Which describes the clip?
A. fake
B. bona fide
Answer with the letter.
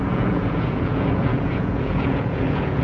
A